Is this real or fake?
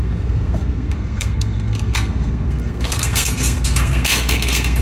fake